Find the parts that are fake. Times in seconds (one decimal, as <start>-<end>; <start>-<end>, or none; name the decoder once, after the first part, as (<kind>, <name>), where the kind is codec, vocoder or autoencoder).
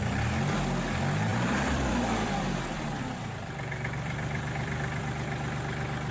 1.3-5.0 (vocoder, BigVGAN v2)